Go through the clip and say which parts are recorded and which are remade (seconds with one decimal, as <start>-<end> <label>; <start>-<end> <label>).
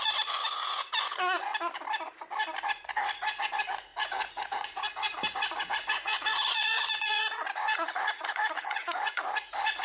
0.0-1.5 remade; 1.5-2.6 recorded; 2.6-9.8 remade